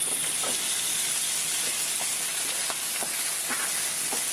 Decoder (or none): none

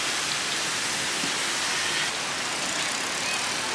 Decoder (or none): none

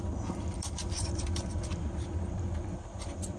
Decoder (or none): vocoder, BigVGAN v2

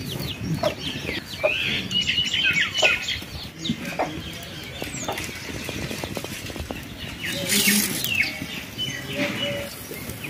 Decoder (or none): none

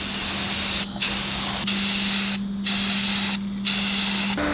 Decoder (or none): none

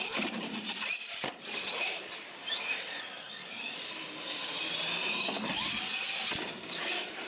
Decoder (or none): none